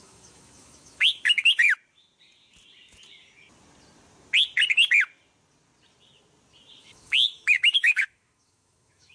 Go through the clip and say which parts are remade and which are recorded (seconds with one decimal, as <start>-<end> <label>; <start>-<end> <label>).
0.0-1.6 remade; 1.6-6.8 recorded; 6.8-9.1 remade